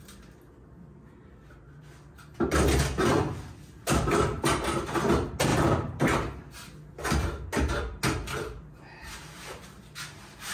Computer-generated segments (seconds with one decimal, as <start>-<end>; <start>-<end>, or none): none